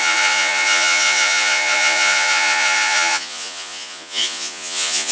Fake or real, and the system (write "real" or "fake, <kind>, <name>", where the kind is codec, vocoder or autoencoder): fake, vocoder, Vocos